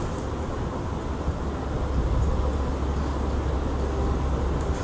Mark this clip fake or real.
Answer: real